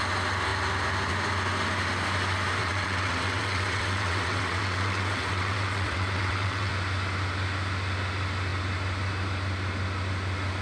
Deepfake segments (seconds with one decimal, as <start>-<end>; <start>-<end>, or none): 2.6-6.7

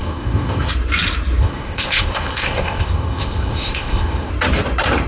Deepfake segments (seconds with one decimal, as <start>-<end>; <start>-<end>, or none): 0.0-0.7; 1.4-4.3